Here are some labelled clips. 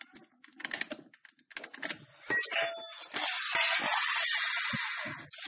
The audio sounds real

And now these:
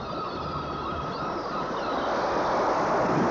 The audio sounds real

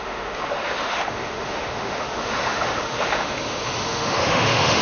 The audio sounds fake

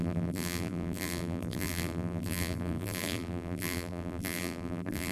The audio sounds fake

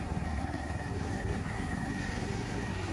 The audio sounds fake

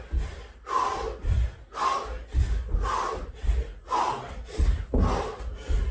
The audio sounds real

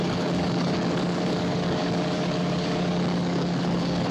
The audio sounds fake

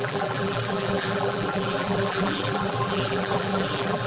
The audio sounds fake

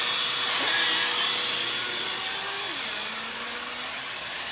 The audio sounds real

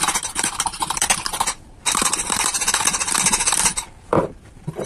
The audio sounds fake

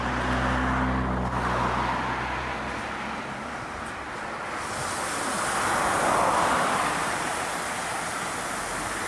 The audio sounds real